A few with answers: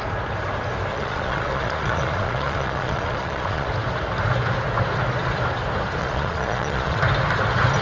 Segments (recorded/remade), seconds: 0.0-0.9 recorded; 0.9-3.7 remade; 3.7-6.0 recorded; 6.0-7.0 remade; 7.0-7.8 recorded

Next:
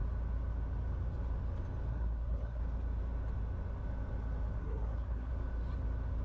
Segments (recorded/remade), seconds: 0.0-1.9 recorded; 1.9-2.6 remade; 2.6-4.6 recorded; 4.6-5.3 remade; 5.3-6.2 recorded

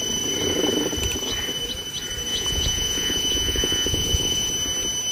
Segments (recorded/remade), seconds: 0.0-2.3 recorded; 2.3-4.5 remade; 4.5-5.1 recorded